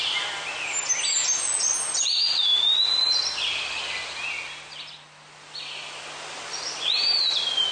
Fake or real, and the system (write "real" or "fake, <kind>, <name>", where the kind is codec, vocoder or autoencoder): real